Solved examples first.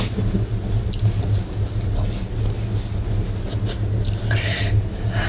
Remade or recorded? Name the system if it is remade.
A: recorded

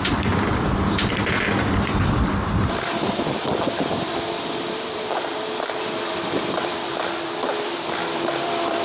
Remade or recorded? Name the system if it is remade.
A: remade, vocoder, BigVGAN v2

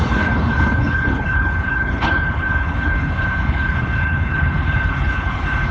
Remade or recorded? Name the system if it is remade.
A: remade, codec, HILCodec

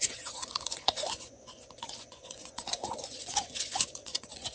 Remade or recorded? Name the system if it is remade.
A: remade, vocoder, Vocos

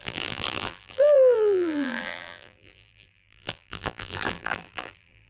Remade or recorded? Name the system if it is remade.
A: remade, vocoder, BigVGAN v2